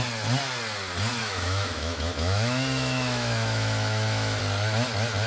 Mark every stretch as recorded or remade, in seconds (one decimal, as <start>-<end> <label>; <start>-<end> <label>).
0.0-1.2 recorded; 1.2-4.4 remade; 4.4-5.3 recorded